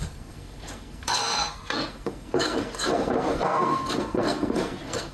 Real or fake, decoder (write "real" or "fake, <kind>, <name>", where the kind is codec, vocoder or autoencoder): fake, codec, SNAC